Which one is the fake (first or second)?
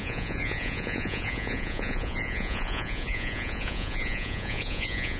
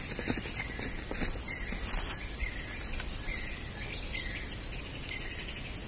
first